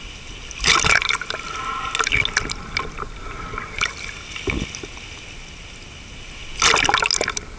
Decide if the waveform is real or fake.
real